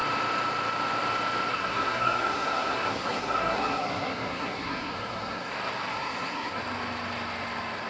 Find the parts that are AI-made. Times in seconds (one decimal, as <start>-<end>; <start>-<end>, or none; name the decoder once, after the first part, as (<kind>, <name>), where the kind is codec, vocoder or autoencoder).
1.5-5.5 (codec, SNAC); 5.9-6.6